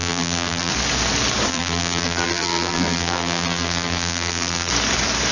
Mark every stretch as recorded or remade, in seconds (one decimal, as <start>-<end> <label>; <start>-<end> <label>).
0.0-0.7 remade; 0.7-1.5 recorded; 1.5-4.7 remade; 4.7-5.3 recorded